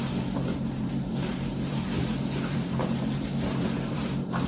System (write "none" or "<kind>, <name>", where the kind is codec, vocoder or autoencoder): vocoder, BigVGAN v2